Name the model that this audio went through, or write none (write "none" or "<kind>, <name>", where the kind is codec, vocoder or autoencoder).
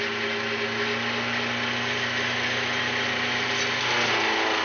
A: none